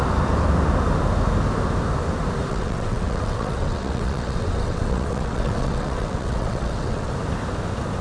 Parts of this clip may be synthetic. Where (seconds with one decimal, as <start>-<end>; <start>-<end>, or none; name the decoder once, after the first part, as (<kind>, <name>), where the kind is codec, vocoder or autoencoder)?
2.5-7.1 (vocoder, WaveNeXt)